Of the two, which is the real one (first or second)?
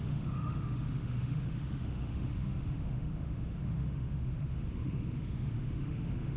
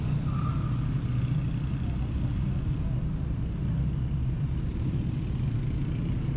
second